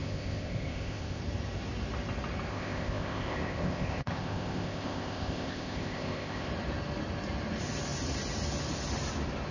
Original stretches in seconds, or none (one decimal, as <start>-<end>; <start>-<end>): 1.2-2.5; 6.5-9.5